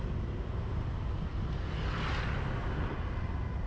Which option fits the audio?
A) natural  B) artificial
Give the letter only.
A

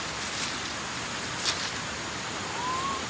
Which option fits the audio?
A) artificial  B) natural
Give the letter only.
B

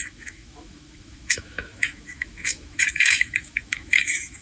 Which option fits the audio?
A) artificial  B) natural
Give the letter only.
A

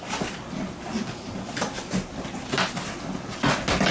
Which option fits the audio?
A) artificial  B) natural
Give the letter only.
B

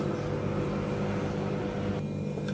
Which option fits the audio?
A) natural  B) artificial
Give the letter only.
A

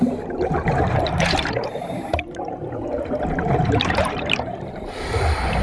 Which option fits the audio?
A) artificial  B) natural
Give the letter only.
A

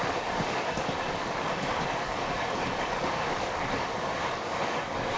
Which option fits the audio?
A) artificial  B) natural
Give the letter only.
A